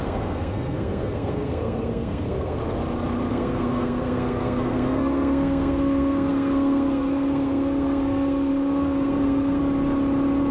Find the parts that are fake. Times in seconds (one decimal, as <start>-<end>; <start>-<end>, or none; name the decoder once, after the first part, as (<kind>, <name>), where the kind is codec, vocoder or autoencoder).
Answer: 0.0-2.6 (codec, SNAC); 3.3-9.6